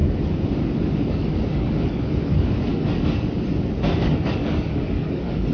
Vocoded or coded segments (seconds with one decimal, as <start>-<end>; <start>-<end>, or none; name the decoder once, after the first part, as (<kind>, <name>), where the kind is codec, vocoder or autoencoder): 0.8-2.7 (codec, DAC); 4.0-5.5